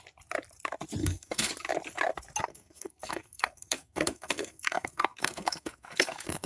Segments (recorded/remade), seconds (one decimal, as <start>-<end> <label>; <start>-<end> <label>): 0.0-1.0 recorded; 1.0-1.5 remade; 1.5-2.5 recorded; 2.5-6.5 remade